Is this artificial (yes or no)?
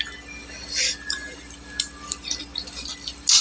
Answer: no